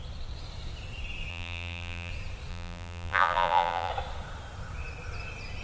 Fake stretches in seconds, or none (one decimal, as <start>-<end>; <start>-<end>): 1.3-2.1; 2.5-3.9